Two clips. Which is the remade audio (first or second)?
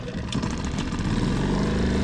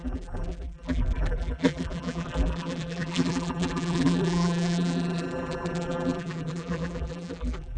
second